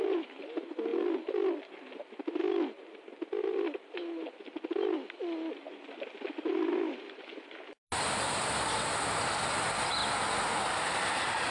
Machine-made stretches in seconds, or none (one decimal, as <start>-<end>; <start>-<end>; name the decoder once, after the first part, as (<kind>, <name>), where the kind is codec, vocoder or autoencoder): 0.9-2.4 (vocoder, BigVGAN v2)